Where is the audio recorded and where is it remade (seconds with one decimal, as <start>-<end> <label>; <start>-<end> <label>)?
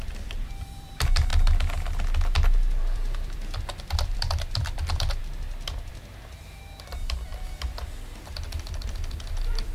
0.0-1.3 remade; 1.3-2.8 recorded; 2.8-5.2 remade; 5.2-5.9 recorded; 5.9-7.3 remade; 7.3-8.3 recorded; 8.3-9.7 remade